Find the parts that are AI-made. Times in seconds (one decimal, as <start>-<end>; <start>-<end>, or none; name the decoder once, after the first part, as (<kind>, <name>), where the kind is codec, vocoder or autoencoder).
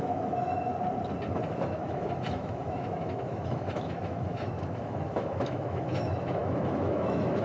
0.0-0.7 (autoencoder, DAC-VAE); 1.3-7.4